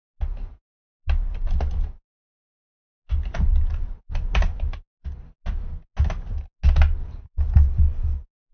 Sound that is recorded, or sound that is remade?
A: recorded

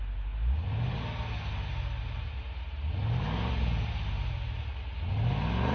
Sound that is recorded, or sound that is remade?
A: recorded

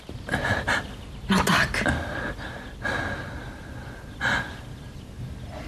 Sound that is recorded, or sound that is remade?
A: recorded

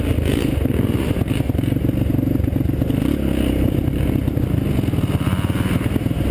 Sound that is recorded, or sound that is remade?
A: recorded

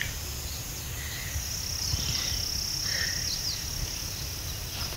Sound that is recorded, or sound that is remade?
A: recorded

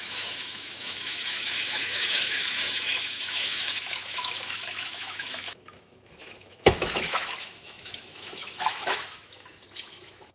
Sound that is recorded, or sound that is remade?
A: remade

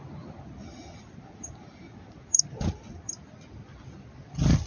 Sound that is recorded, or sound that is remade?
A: recorded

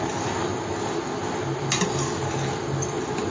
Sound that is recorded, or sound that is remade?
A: recorded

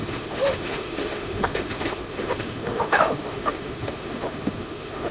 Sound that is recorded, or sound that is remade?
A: remade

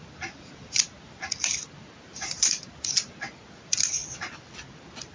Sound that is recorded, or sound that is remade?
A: recorded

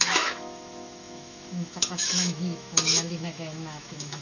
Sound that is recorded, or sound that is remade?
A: remade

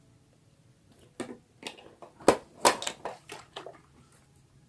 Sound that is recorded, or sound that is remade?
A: recorded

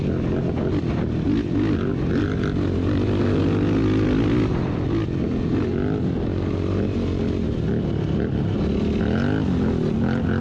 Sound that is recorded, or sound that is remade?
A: recorded